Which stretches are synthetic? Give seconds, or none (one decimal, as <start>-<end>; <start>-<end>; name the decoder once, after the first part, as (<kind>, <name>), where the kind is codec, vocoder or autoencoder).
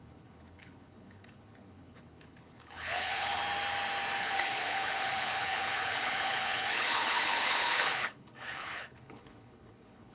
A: 0.0-3.4 (codec, HILCodec); 4.2-10.1